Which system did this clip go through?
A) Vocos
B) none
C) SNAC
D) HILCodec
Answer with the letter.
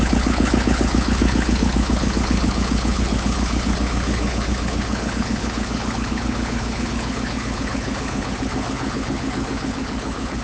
D